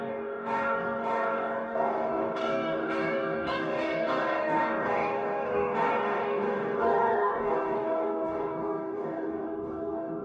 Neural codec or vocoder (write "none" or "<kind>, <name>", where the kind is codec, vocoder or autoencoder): codec, DAC